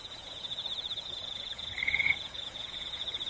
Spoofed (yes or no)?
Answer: yes